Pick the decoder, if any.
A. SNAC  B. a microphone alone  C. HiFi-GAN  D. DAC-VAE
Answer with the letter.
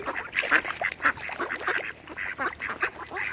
B